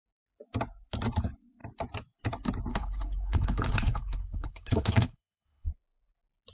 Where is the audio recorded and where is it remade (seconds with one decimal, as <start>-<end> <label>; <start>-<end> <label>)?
0.0-2.7 recorded; 2.7-5.7 remade; 5.7-6.5 recorded